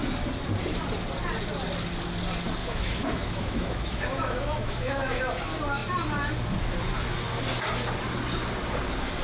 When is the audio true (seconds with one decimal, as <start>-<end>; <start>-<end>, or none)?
0.0-2.6; 5.2-9.2